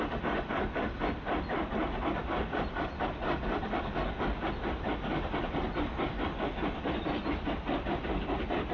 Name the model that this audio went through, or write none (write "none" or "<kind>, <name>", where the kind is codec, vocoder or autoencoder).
none